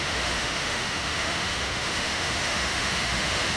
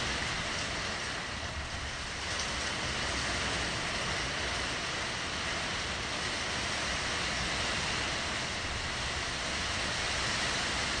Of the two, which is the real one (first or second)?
second